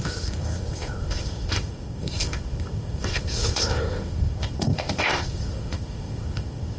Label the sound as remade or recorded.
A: remade